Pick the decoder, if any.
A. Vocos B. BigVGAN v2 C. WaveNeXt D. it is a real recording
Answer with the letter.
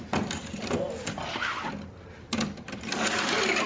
D